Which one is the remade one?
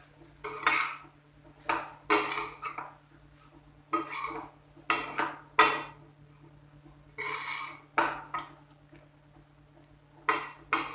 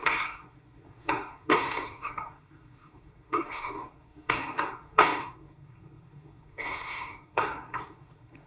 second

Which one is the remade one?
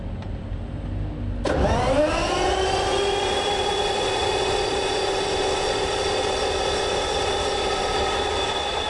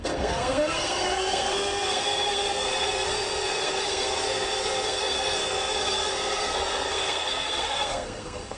second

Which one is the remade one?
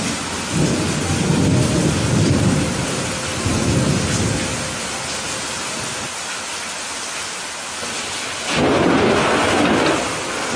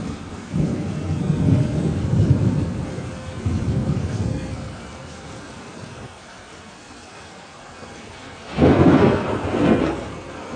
second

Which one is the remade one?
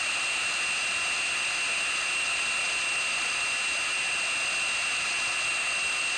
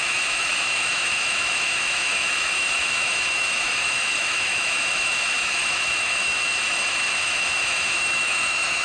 second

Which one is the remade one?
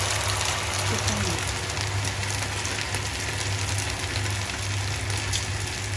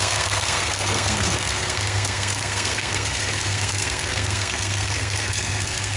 second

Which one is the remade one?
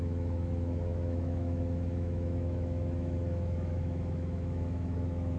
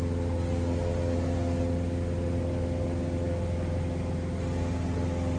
first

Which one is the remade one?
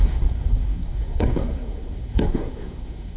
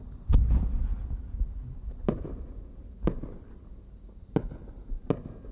first